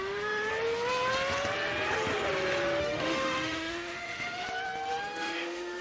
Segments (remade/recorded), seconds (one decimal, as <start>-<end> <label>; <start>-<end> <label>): 0.0-0.5 remade; 0.5-2.8 recorded; 2.8-4.4 remade; 4.4-5.0 recorded; 5.0-5.8 remade